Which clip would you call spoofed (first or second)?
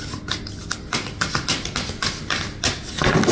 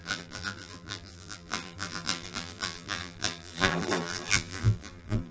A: second